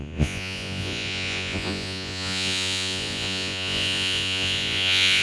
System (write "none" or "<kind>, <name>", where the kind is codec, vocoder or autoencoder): vocoder, Vocos